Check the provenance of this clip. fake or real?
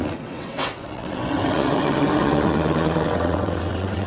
fake